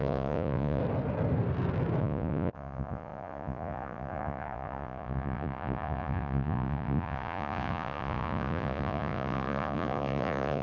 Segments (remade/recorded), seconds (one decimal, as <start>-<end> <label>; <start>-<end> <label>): 0.0-0.8 remade; 0.8-2.0 recorded; 2.0-10.6 remade